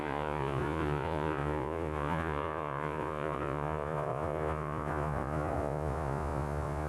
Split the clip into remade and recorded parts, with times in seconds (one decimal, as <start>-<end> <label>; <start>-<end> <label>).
0.0-6.9 remade